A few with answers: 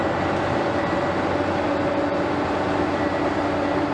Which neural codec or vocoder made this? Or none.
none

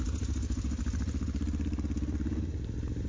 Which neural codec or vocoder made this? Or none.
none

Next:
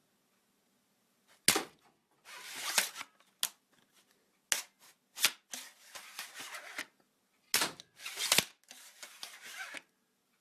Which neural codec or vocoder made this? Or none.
none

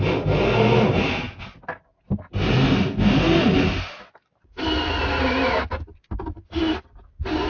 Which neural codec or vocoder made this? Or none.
none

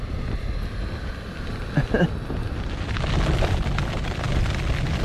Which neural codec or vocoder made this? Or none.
none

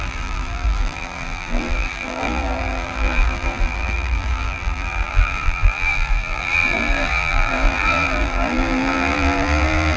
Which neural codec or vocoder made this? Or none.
vocoder, BigVGAN v2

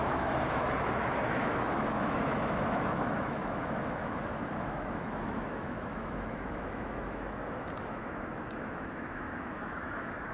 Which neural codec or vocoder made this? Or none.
autoencoder, DAC-VAE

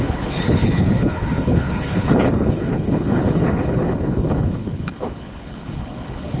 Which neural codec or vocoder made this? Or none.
codec, HILCodec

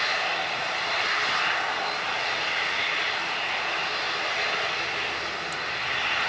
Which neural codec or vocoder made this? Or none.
none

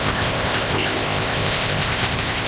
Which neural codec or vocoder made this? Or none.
codec, ZipCodec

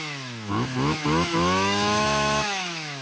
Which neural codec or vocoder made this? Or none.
autoencoder, DAC-VAE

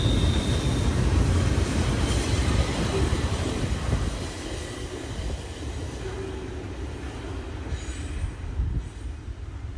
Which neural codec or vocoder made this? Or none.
none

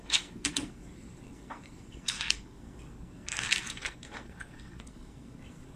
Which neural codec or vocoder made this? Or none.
codec, SNAC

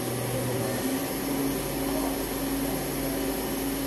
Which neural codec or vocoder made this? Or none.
none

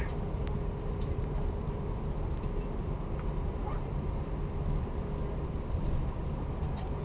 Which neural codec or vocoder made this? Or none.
none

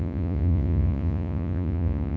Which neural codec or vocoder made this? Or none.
vocoder, Vocos